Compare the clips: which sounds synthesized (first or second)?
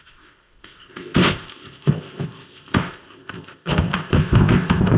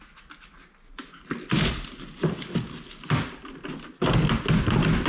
first